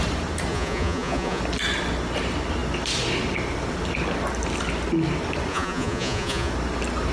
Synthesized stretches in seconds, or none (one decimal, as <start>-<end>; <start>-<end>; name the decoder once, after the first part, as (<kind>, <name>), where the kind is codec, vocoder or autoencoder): 0.5-1.4 (vocoder, Vocos); 5.5-6.5